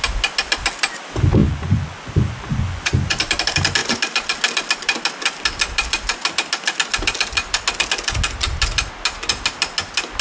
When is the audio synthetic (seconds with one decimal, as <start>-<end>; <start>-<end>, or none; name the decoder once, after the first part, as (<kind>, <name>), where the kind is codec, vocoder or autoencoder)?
1.4-3.2 (vocoder, Vocos)